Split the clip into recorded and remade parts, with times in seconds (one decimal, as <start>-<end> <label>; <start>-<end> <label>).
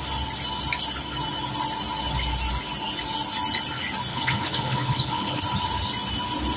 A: 0.0-4.1 recorded; 4.1-5.4 remade; 5.4-6.6 recorded